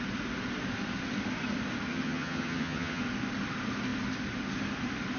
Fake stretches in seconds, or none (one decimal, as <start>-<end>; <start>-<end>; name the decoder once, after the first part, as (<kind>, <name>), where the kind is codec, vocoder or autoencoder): 1.9-3.0 (vocoder, HiFi-GAN)